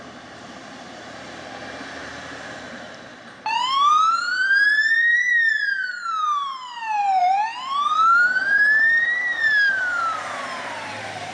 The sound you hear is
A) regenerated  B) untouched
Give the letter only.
A